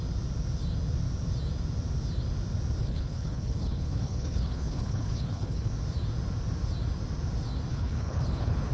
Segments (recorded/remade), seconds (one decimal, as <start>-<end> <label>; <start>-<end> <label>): 0.0-2.8 recorded; 2.8-5.7 remade; 5.7-7.7 recorded; 7.7-8.7 remade

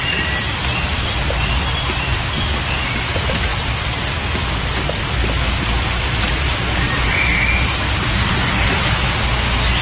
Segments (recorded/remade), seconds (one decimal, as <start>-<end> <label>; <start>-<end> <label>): 0.0-5.2 recorded; 5.2-8.5 remade; 8.5-9.8 recorded

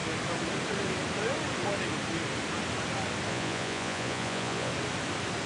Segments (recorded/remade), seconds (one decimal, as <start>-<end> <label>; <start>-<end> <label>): 0.0-3.3 recorded; 3.3-4.7 remade; 4.7-5.5 recorded

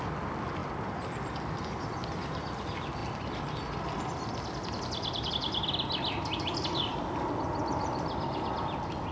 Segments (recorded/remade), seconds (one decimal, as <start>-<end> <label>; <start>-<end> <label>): 0.0-9.1 recorded

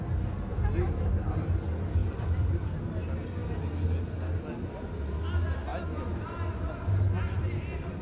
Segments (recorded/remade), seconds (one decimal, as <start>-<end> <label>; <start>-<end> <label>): 0.0-8.0 recorded

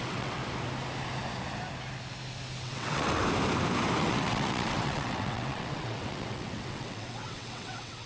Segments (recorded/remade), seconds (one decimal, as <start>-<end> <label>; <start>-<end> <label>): 0.0-0.4 remade; 0.4-2.6 recorded; 2.6-3.2 remade; 3.2-4.0 recorded; 4.0-8.1 remade

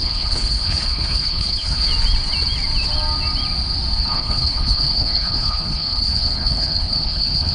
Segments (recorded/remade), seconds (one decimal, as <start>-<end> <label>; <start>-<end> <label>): 0.0-1.9 remade; 1.9-4.0 recorded; 4.0-7.5 remade